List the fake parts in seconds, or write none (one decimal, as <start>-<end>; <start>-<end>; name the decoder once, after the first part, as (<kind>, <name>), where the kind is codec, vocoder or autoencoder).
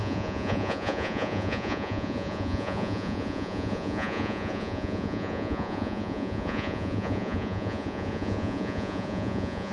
0.0-9.7 (vocoder, Vocos)